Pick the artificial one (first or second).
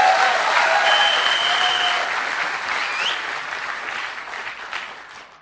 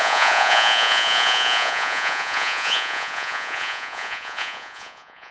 second